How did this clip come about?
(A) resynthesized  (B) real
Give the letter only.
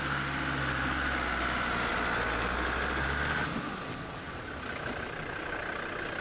B